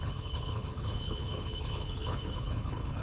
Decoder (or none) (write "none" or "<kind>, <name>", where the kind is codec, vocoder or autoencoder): codec, HILCodec